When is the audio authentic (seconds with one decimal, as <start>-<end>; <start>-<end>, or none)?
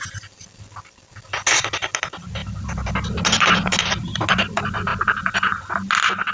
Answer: 0.0-6.3